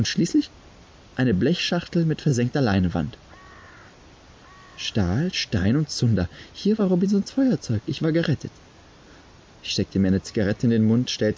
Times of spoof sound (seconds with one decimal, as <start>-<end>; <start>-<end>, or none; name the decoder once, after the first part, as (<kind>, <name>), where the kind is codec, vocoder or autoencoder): none